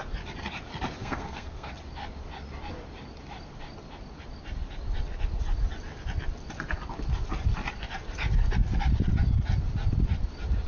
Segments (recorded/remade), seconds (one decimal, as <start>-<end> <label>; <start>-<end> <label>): 0.0-1.0 recorded; 1.0-1.7 remade; 1.7-10.7 recorded